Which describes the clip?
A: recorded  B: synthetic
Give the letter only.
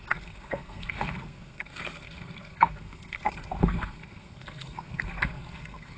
B